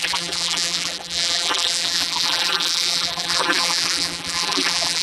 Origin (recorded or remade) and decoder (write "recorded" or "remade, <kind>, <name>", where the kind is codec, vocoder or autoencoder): remade, vocoder, BigVGAN v2